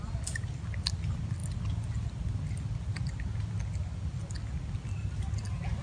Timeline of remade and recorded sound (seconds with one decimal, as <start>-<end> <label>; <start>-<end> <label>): 0.0-5.8 recorded